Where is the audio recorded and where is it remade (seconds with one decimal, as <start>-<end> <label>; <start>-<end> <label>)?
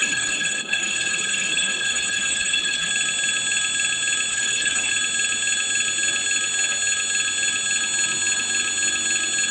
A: 0.0-2.9 remade; 2.9-4.3 recorded; 4.3-4.9 remade; 4.9-9.5 recorded